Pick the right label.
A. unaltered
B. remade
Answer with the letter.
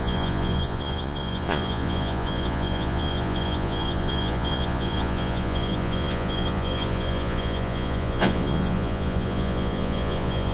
B